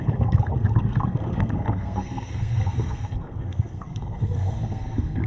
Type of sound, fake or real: fake